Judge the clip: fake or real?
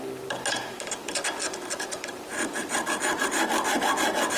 real